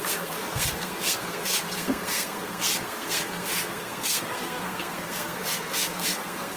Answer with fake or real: fake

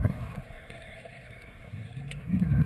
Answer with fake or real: fake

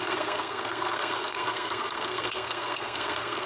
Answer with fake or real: fake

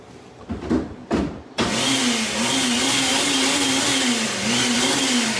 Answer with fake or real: real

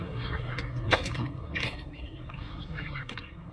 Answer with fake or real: fake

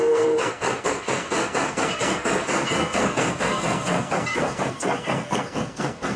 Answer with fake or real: fake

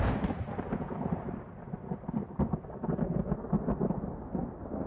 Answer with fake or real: real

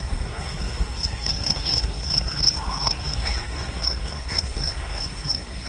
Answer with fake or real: fake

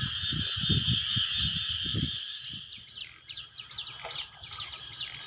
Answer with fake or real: real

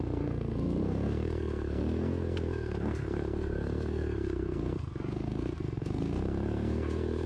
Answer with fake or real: fake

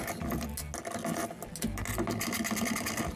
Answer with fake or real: real